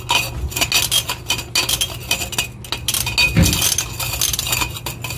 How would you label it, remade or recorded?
recorded